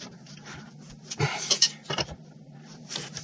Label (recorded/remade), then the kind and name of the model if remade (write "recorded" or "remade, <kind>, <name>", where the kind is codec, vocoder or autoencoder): remade, vocoder, BigVGAN v2